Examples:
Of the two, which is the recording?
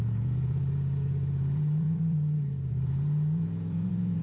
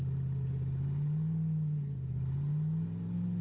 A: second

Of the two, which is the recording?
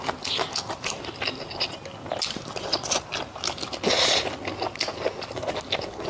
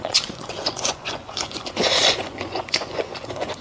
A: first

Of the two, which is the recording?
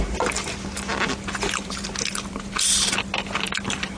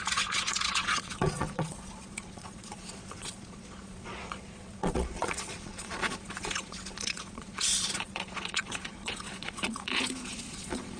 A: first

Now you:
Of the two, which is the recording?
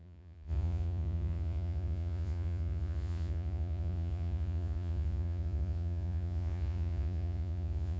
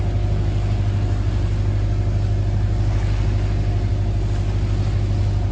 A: second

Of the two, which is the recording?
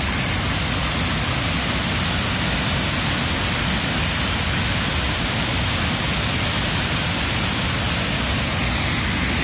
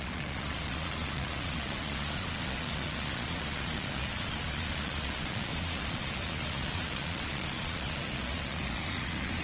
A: first